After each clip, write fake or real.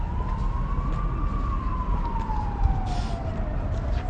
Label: real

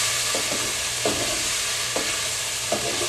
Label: real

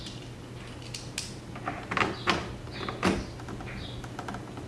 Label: real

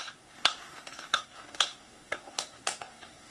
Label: fake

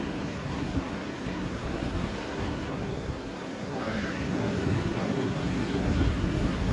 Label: fake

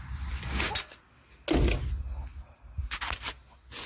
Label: real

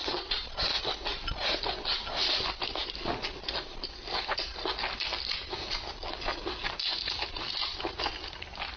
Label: real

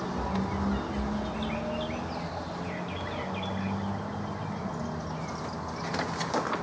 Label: real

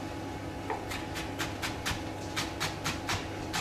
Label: real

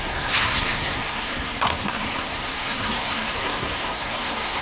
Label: fake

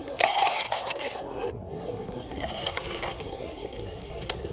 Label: fake